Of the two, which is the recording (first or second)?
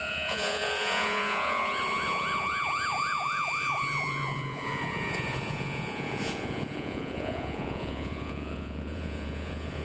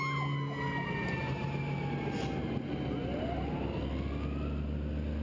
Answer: second